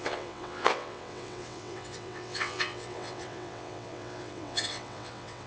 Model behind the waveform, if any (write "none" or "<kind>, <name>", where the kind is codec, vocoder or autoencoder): vocoder, WaveNeXt